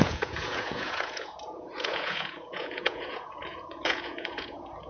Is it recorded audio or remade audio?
remade